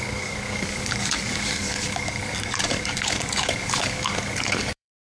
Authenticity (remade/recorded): remade